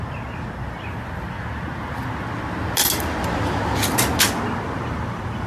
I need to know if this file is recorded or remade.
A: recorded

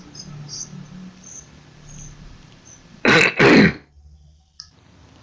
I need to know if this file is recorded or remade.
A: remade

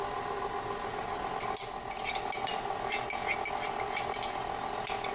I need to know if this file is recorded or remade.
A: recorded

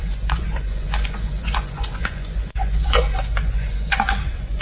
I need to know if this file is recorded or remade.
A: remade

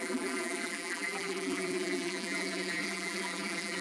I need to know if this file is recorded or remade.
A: remade